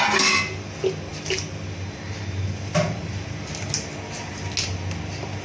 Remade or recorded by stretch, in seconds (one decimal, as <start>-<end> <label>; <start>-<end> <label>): 0.0-5.4 recorded